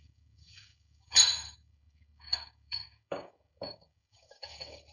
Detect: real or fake fake